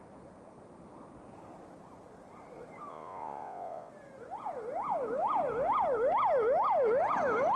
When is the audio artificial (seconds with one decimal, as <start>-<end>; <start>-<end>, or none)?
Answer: 2.9-3.9